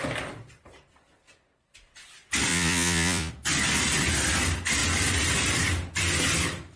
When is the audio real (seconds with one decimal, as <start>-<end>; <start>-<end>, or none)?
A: 0.0-2.5; 3.3-6.8